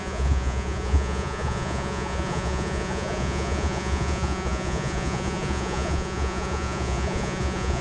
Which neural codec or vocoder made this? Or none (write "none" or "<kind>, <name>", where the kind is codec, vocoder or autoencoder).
vocoder, Vocos